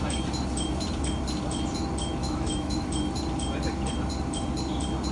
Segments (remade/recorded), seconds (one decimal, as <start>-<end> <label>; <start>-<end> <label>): 0.0-2.2 recorded; 2.2-2.9 remade; 2.9-5.1 recorded